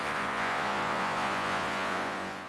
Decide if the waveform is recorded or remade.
remade